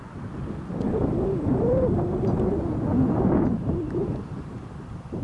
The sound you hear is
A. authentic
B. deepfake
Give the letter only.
A